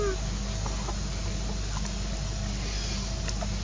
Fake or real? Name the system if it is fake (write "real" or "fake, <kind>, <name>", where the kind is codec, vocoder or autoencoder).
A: real